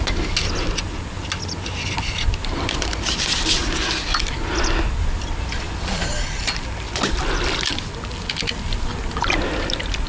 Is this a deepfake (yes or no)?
no